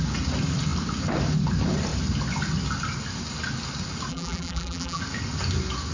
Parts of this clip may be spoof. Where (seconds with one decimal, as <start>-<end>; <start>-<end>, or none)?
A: 4.1-5.0